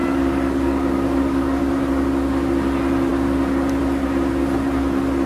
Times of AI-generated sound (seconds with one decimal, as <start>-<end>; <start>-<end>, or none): 0.0-1.6